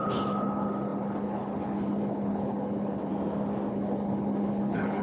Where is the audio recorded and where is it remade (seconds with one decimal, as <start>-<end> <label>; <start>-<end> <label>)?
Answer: 0.0-3.1 remade; 3.1-3.7 recorded; 3.7-5.0 remade